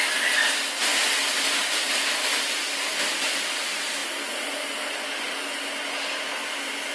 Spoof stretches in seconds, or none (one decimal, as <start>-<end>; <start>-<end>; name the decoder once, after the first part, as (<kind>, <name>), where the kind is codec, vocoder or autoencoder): none